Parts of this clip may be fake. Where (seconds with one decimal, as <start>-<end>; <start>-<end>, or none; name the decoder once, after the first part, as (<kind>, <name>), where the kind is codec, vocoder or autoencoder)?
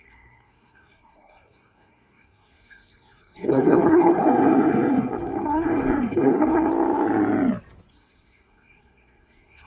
0.0-6.7 (codec, SNAC); 7.9-9.7